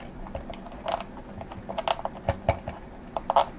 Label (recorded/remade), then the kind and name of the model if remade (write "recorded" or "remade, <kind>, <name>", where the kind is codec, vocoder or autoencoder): recorded